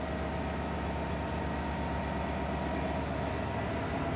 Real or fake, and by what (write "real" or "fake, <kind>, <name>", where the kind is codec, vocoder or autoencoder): real